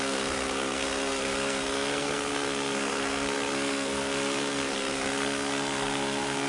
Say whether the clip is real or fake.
fake